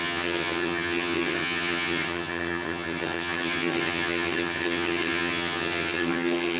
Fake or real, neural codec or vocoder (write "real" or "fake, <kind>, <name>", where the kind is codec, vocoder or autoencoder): fake, vocoder, HiFi-GAN